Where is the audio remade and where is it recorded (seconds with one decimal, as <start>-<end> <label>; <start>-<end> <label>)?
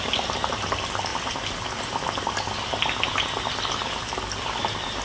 0.0-5.0 recorded